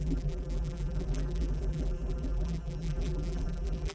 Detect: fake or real fake